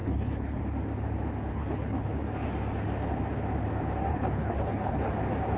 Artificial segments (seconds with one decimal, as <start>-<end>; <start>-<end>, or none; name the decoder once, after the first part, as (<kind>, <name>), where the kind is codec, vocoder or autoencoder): 0.0-0.6 (codec, HILCodec); 1.5-2.2; 4.1-5.1